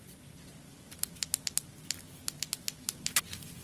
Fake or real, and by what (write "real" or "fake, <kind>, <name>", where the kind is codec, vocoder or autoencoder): real